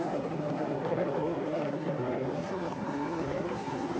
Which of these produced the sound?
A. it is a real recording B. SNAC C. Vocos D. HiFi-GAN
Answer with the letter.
B